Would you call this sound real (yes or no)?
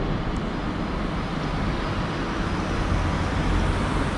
yes